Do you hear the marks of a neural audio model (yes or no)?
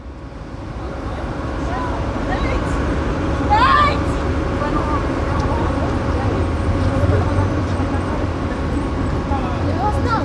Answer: no